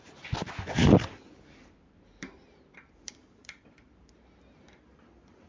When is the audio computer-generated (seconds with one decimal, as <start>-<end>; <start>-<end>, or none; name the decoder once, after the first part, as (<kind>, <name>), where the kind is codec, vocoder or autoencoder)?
0.8-4.1 (vocoder, BigVGAN v2)